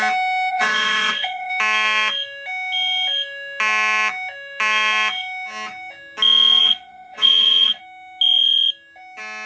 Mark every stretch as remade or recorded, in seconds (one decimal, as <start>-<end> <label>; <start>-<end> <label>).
0.0-0.5 recorded; 0.5-1.5 remade; 1.5-6.6 recorded; 6.6-7.8 remade; 7.8-9.5 recorded